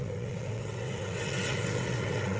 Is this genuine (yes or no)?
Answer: no